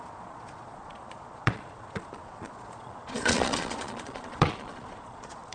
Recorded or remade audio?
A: remade